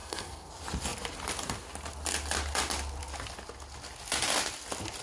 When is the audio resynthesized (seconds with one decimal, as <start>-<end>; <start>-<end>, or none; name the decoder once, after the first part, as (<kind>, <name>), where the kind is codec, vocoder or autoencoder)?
0.0-0.5 (codec, SNAC)